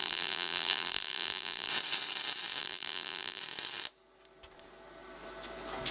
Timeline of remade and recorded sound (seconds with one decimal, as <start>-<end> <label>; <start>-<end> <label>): 0.0-1.7 remade; 1.7-2.6 recorded; 2.6-3.4 remade; 3.4-5.9 recorded